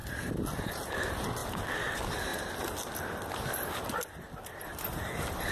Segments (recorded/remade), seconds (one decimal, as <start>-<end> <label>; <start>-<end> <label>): 0.0-5.5 recorded